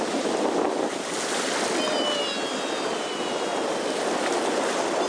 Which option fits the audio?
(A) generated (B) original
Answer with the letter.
B